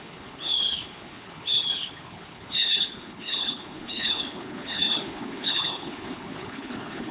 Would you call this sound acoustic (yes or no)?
no